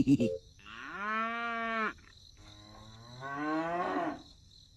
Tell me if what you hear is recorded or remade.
remade